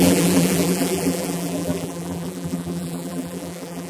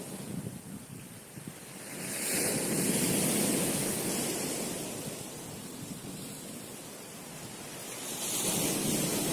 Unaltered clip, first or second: second